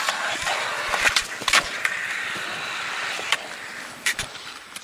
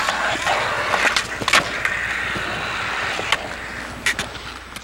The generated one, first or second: first